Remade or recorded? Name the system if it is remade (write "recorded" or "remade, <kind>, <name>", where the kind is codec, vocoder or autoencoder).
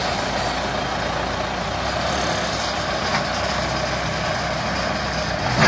recorded